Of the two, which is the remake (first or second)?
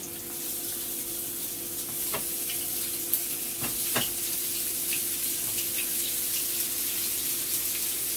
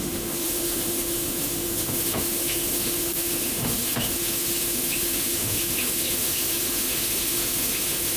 second